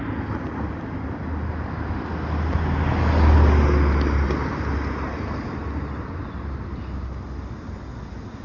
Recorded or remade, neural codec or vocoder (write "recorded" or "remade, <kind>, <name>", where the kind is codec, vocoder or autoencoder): recorded